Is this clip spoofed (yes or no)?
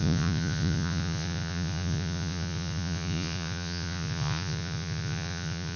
yes